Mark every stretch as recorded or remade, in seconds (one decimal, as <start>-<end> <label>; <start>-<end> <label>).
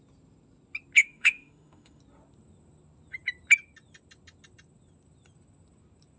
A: 0.0-1.0 recorded; 1.0-2.0 remade; 2.0-6.2 recorded